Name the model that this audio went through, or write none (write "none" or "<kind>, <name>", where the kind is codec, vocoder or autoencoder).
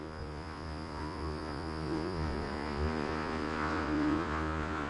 vocoder, Vocos